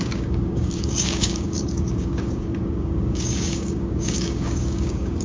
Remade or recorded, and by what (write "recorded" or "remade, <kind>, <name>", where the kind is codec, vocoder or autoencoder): remade, codec, DAC